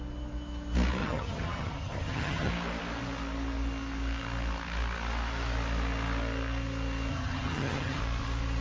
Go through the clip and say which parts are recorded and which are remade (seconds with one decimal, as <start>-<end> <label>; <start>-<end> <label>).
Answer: 0.0-1.0 recorded; 1.0-2.5 remade; 2.5-7.1 recorded; 7.1-8.0 remade; 8.0-8.6 recorded